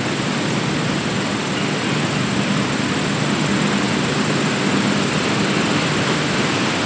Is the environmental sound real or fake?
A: real